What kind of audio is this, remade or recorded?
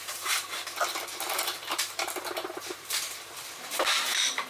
remade